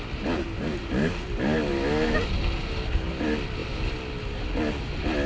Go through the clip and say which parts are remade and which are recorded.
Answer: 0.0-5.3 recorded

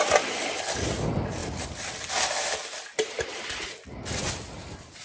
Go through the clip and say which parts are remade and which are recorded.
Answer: 0.0-5.0 recorded

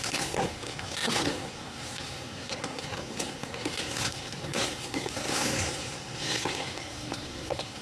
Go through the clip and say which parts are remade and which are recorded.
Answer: 0.0-7.8 remade

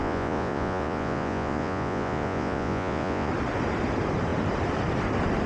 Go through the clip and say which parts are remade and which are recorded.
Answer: 0.0-3.3 remade; 3.3-5.5 recorded

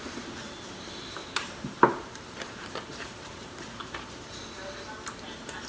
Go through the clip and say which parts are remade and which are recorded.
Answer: 0.0-1.2 recorded; 1.2-4.4 remade; 4.4-5.7 recorded

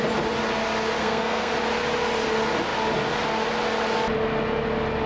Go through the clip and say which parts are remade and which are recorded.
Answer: 0.0-1.0 recorded; 1.0-1.5 remade; 1.5-5.1 recorded

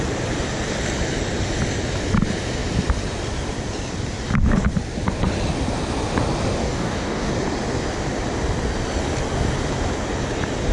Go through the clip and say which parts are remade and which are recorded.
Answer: 0.0-6.6 recorded; 6.6-7.3 remade; 7.3-10.7 recorded